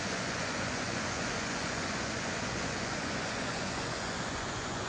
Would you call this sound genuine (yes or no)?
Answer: no